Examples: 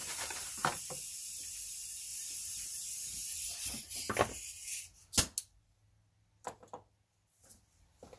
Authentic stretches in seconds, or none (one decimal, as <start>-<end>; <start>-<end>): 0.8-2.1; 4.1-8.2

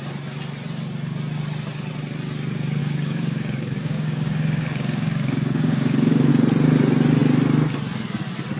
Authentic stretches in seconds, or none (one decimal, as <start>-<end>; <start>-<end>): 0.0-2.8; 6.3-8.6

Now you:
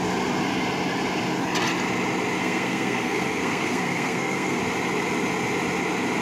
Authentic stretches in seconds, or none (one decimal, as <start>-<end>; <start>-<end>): 0.0-2.4; 4.6-6.2

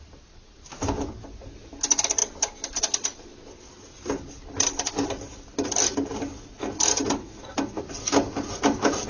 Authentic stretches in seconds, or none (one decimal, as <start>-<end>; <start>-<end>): 0.0-9.1